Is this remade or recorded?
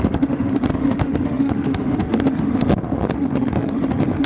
remade